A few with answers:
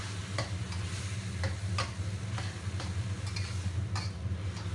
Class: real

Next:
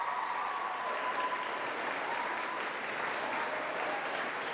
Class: real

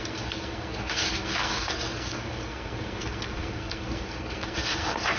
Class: fake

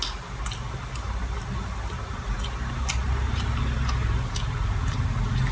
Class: real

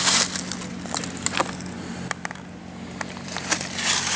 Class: real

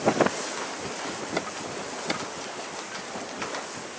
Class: real